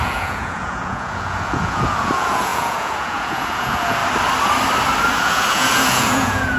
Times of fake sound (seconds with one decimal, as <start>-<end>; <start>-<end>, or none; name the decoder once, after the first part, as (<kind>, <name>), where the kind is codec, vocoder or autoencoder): 0.0-4.0 (vocoder, Vocos); 5.2-6.6